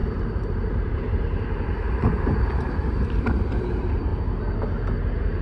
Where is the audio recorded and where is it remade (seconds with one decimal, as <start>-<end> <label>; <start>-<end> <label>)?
0.0-4.1 remade; 4.1-5.4 recorded